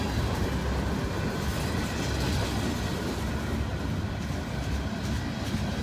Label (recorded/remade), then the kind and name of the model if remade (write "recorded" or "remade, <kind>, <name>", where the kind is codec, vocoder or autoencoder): recorded